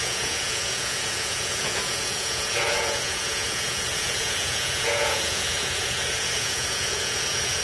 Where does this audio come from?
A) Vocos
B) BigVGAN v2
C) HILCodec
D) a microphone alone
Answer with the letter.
A